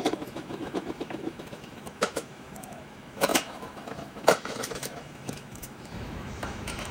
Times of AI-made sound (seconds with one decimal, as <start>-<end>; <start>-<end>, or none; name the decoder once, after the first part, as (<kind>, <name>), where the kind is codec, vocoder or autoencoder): 0.0-6.9 (autoencoder, DAC-VAE)